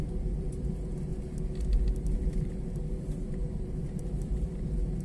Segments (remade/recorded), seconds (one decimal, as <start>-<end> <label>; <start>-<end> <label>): 0.0-1.1 remade; 1.1-2.4 recorded; 2.4-5.0 remade